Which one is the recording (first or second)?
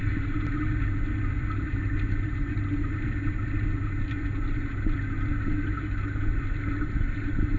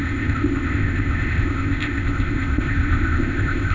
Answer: first